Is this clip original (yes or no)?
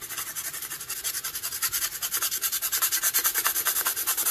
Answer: yes